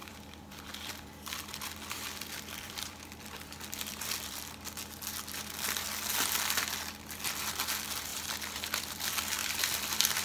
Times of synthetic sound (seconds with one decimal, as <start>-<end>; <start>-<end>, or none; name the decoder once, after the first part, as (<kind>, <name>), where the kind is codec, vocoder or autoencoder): 0.0-4.4 (vocoder, BigVGAN v2); 8.1-8.8; 9.4-10.2